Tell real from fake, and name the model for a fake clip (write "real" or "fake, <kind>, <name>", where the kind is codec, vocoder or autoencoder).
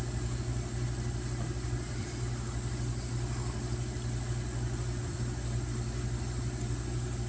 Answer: real